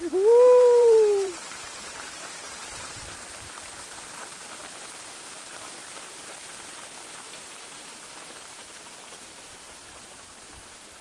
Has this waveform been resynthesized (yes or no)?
yes